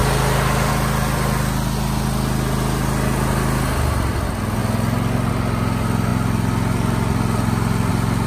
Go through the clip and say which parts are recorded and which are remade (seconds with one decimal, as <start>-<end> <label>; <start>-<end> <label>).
0.0-8.3 recorded

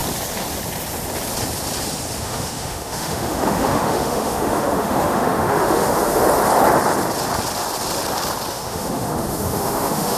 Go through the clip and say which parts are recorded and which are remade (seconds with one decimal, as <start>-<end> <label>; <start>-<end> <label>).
0.0-2.2 recorded; 2.2-6.2 remade; 6.2-8.5 recorded; 8.5-10.2 remade

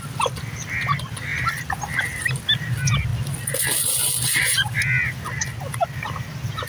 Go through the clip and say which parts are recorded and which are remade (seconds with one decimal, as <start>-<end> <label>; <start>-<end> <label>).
0.0-6.7 recorded

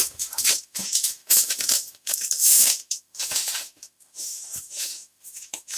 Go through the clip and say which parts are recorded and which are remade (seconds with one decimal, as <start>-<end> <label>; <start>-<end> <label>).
0.0-5.8 remade

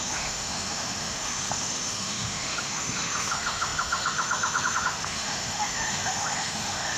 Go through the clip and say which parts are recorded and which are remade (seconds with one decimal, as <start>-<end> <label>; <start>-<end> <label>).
0.0-7.0 remade